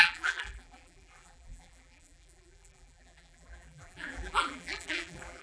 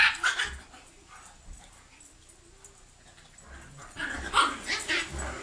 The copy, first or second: first